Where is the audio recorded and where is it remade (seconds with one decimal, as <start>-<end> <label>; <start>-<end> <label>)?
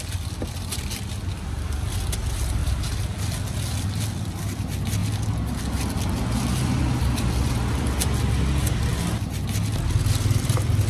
0.0-10.9 recorded